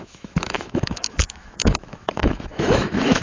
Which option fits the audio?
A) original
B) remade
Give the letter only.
B